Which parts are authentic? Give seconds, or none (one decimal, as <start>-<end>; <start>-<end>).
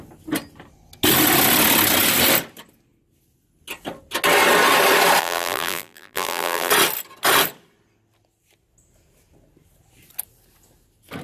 0.0-5.2; 6.7-11.2